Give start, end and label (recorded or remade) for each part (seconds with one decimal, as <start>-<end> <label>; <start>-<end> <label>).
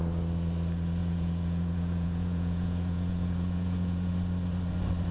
0.0-1.0 recorded; 1.0-4.1 remade; 4.1-5.1 recorded